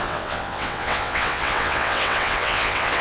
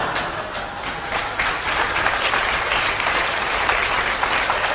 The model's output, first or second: first